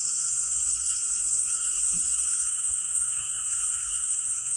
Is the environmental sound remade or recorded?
remade